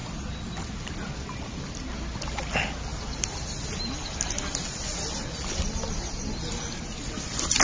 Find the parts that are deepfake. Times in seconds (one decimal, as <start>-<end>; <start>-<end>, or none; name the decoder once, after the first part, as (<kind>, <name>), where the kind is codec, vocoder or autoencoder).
none